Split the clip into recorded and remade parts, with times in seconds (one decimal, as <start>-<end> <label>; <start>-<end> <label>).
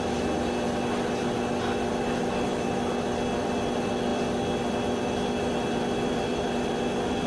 0.0-7.3 recorded